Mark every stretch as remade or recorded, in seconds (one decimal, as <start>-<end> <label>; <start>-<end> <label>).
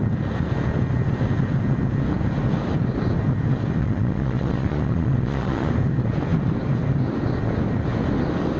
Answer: 0.0-3.8 recorded; 3.8-5.7 remade; 5.7-8.6 recorded